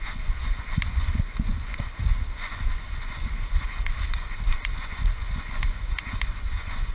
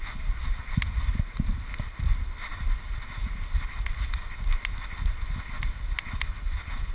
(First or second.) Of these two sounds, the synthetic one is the first